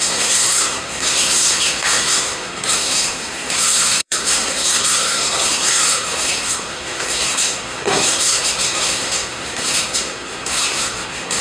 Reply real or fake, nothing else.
fake